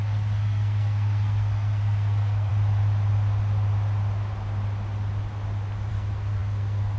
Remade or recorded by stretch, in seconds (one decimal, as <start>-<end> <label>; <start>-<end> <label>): 0.0-2.5 remade; 2.5-5.9 recorded; 5.9-7.0 remade